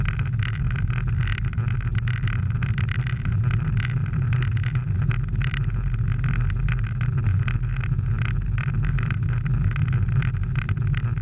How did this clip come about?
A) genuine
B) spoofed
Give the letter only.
A